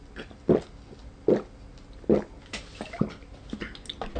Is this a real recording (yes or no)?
yes